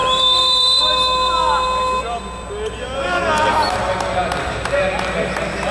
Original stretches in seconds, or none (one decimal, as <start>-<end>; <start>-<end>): 0.8-5.7

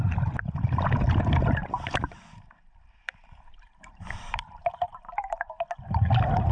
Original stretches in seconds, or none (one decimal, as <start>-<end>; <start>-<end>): 0.0-1.6; 5.4-6.5

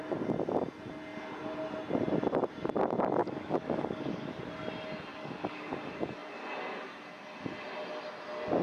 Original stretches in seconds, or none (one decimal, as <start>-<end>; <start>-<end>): 0.0-3.2; 4.4-5.1; 5.7-8.6

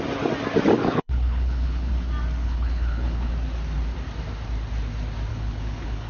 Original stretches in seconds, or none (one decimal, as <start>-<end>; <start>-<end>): 0.0-0.8; 1.9-2.4; 3.3-5.3

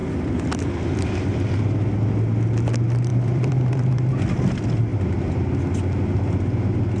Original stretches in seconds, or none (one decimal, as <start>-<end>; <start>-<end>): 1.6-3.1; 4.1-7.0